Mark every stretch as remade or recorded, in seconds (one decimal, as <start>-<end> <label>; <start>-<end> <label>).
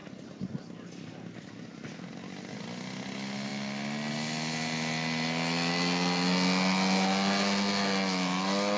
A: 0.0-8.8 recorded